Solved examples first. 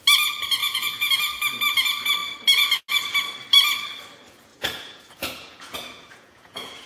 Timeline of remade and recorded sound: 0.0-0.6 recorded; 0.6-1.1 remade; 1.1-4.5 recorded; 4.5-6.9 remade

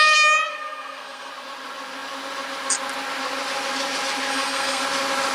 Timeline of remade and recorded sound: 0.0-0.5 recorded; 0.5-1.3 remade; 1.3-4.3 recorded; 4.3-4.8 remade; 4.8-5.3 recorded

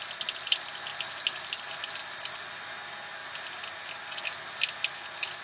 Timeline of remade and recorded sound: 0.0-5.4 recorded